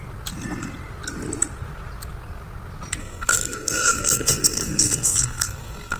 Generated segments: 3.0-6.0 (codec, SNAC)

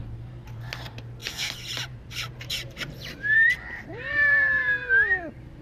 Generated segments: 1.2-4.6 (vocoder, BigVGAN v2)

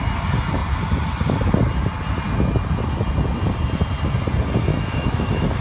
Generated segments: 4.7-5.6 (autoencoder, DAC-VAE)

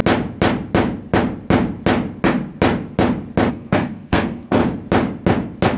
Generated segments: 3.5-4.6 (codec, SNAC)

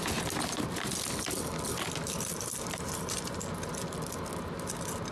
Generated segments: 2.3-3.4 (vocoder, BigVGAN v2)

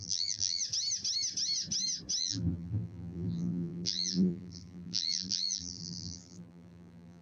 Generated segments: 0.0-0.6 (vocoder, BigVGAN v2); 2.2-7.2